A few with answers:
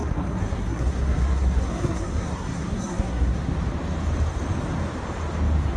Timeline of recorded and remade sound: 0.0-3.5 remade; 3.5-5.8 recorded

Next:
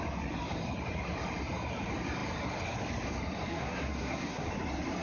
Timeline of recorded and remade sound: 0.0-3.5 recorded; 3.5-4.5 remade; 4.5-5.0 recorded

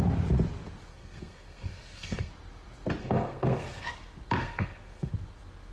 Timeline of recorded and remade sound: 0.0-0.9 recorded; 0.9-2.3 remade; 2.3-3.0 recorded; 3.0-3.9 remade; 3.9-4.4 recorded; 4.4-5.1 remade; 5.1-5.7 recorded

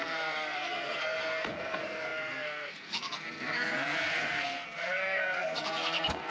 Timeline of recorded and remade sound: 0.0-6.3 remade

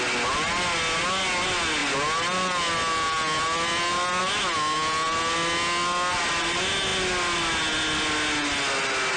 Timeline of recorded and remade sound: 0.0-9.2 recorded